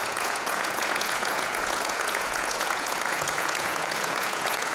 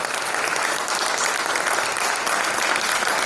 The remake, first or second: first